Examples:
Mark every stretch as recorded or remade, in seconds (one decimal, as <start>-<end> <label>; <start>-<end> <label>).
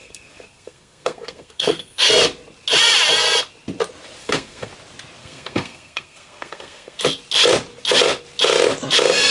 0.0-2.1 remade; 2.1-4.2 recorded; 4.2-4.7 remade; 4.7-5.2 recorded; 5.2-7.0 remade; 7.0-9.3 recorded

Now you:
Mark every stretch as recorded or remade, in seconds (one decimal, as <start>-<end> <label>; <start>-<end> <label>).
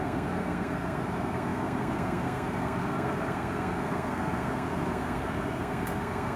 0.0-6.4 remade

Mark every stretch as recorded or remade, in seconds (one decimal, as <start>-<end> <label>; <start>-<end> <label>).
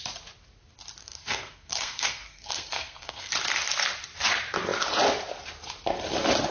0.0-1.0 recorded; 1.0-3.3 remade; 3.3-6.5 recorded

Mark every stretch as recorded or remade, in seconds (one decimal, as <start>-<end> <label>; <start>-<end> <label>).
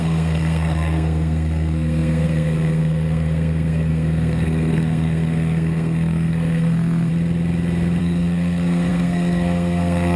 0.0-7.1 remade; 7.1-8.0 recorded; 8.0-10.2 remade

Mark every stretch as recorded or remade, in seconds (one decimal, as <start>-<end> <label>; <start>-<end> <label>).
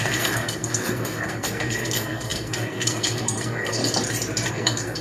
0.0-3.8 remade; 3.8-4.5 recorded; 4.5-5.0 remade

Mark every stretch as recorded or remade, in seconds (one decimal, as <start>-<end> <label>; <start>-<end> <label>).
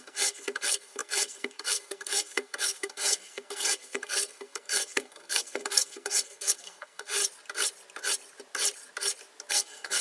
0.0-7.2 remade; 7.2-9.5 recorded; 9.5-10.0 remade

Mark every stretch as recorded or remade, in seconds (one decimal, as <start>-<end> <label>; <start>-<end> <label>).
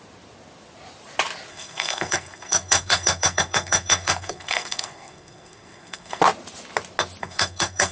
0.0-1.5 recorded; 1.5-6.2 remade; 6.2-7.2 recorded; 7.2-7.9 remade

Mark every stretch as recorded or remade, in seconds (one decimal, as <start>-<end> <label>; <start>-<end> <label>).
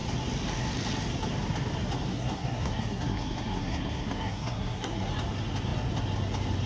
0.0-2.1 recorded; 2.1-5.1 remade; 5.1-6.7 recorded